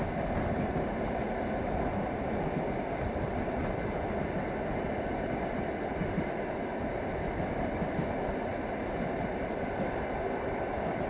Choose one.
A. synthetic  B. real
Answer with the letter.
B